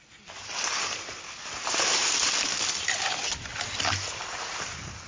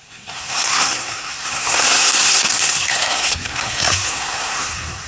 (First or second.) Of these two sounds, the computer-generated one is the second